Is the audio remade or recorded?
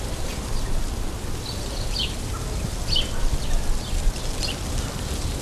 recorded